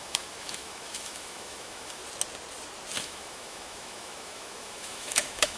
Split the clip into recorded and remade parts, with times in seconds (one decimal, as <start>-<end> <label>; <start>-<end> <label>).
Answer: 0.0-2.0 remade; 2.0-3.0 recorded; 3.0-5.6 remade